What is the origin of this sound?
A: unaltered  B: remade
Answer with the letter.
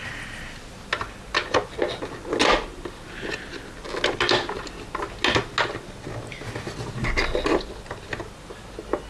A